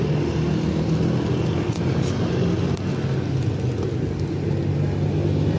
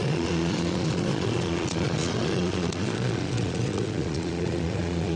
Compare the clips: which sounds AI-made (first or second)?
second